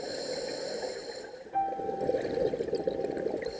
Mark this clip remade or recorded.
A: recorded